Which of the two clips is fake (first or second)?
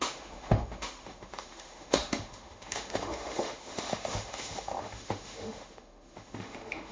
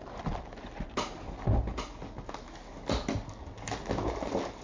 first